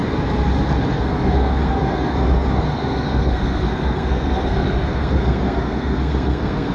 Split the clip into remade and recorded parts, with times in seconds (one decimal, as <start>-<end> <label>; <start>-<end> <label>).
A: 0.0-0.9 recorded; 0.9-6.7 remade